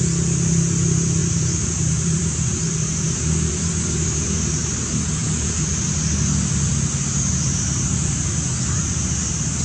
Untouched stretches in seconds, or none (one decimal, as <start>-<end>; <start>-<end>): 0.0-1.2; 4.8-9.6

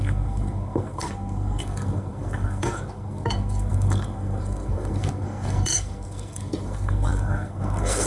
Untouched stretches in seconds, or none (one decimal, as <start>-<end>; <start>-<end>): none